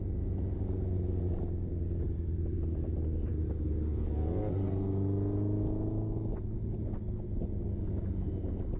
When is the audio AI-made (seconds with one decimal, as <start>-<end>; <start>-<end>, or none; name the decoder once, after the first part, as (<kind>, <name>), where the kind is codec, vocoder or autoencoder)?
none